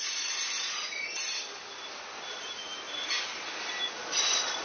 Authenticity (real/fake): real